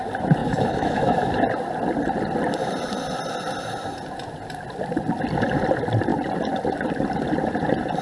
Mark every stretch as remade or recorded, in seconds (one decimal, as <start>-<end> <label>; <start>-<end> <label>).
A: 0.0-0.4 recorded; 0.4-1.3 remade; 1.3-8.0 recorded